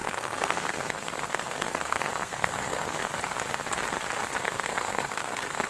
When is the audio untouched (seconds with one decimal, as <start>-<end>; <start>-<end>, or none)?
3.1-4.4